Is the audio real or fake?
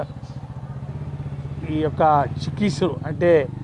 real